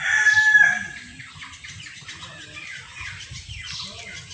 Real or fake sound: real